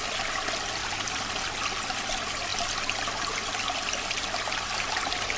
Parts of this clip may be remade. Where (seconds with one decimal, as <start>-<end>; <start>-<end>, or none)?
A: 0.8-1.3